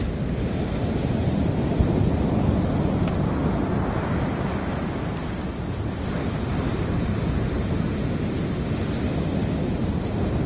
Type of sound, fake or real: real